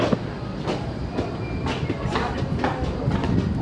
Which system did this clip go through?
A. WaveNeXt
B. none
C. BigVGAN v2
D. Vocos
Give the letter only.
B